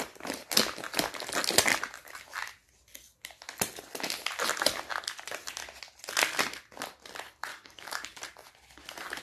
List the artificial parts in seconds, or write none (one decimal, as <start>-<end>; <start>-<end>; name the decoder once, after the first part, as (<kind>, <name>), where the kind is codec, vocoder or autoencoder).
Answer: 7.5-8.2 (codec, DAC)